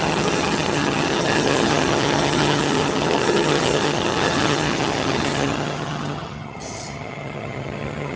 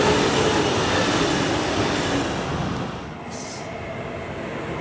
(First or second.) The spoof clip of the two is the first